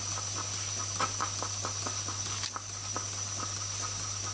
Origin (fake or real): real